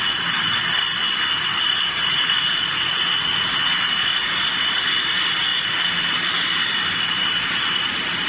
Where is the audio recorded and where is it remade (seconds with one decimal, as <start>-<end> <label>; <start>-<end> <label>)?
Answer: 0.0-8.3 recorded